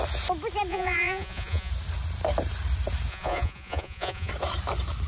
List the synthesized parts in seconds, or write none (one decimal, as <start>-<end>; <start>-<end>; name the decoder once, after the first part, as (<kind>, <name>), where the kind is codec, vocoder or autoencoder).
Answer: 0.7-1.7 (vocoder, Vocos); 3.1-4.3